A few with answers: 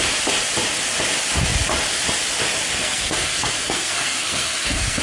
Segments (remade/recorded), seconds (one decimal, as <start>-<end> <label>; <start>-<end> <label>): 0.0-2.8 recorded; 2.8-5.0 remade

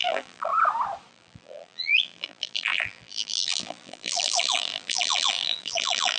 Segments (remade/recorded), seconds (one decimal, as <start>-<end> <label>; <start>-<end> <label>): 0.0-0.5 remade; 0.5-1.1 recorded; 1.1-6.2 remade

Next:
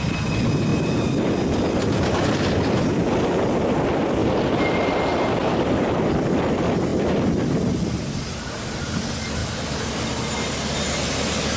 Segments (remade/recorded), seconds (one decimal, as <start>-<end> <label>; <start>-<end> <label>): 0.0-0.7 recorded; 0.7-1.5 remade; 1.5-4.2 recorded; 4.2-6.1 remade; 6.1-6.9 recorded; 6.9-8.9 remade; 8.9-11.6 recorded

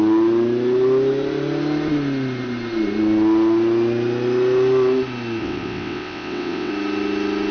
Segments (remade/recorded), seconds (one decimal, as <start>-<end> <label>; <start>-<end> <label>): 0.0-5.4 recorded; 5.4-6.7 remade; 6.7-7.5 recorded